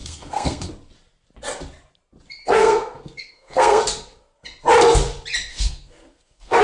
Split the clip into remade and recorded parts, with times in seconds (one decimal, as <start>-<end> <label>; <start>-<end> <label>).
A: 0.0-0.7 remade; 0.7-2.4 recorded; 2.4-3.8 remade; 3.8-5.5 recorded; 5.5-6.6 remade